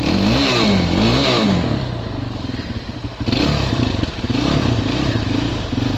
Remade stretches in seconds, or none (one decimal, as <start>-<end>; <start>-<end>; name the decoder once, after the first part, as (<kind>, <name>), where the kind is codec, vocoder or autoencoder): 3.7-5.5 (vocoder, BigVGAN v2)